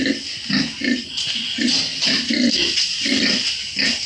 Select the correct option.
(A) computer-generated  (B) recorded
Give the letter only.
B